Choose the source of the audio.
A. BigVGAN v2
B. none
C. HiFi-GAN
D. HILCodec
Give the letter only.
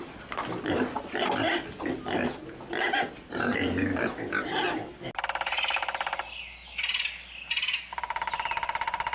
B